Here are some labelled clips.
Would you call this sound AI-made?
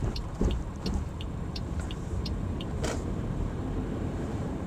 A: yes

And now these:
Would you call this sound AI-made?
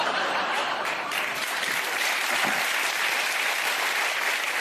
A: yes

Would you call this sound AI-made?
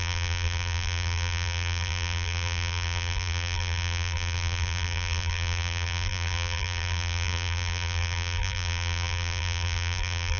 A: yes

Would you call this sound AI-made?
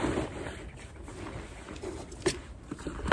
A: no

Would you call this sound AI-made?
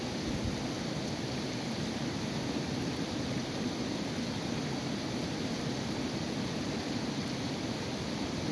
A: no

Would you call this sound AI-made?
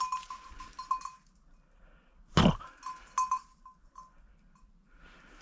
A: no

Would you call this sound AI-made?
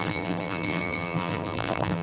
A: yes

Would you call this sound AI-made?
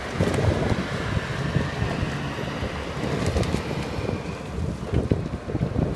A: no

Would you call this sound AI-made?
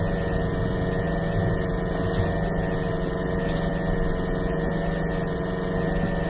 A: no